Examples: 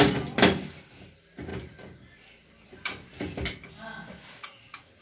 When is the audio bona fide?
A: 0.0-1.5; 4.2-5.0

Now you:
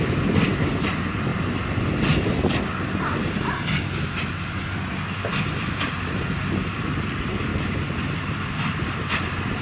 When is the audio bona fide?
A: 1.3-5.4; 7.5-8.0